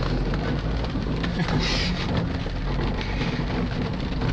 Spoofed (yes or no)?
no